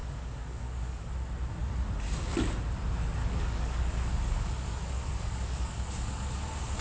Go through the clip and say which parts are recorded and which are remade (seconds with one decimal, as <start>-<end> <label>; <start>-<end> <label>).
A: 0.0-1.1 remade; 1.1-3.2 recorded; 3.2-6.3 remade; 6.3-6.8 recorded